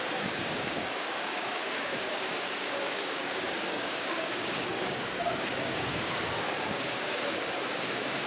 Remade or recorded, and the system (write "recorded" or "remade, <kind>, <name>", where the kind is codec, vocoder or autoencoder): remade, codec, DAC